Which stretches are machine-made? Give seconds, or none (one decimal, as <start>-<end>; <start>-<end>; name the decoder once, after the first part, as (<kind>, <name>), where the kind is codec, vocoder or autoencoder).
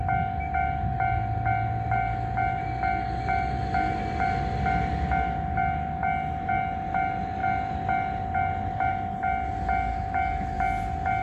none